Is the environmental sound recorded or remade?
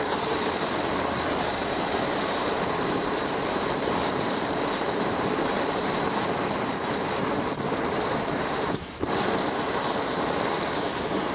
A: remade